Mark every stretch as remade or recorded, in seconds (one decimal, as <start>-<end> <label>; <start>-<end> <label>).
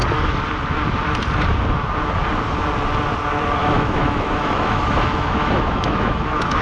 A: 0.0-3.6 recorded; 3.6-6.6 remade